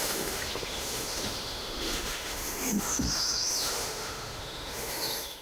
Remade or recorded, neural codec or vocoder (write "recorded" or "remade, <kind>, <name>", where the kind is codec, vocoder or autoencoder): remade, autoencoder, DAC-VAE